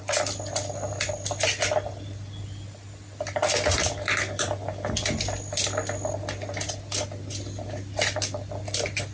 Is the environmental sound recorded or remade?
recorded